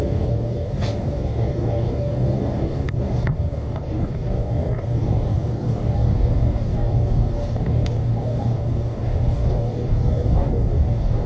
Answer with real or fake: fake